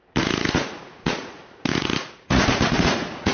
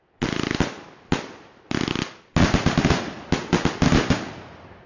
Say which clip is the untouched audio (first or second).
second